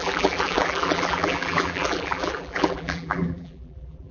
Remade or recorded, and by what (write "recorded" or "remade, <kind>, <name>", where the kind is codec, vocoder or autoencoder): remade, vocoder, BigVGAN v2